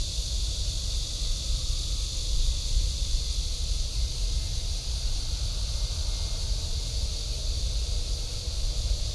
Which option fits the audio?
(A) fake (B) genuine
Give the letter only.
B